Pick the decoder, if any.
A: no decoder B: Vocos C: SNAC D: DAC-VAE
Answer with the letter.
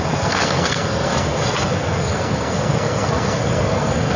C